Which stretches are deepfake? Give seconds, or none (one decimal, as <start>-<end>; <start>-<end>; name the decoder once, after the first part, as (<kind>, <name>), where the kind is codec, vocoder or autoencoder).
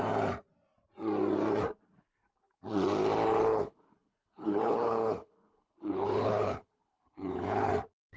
3.5-7.7 (codec, HILCodec)